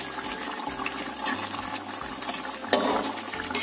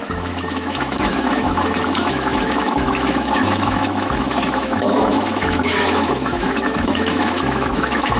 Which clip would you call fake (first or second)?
second